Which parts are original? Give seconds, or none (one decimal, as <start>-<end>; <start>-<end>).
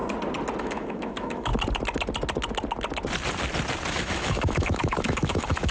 0.0-0.6; 1.5-3.9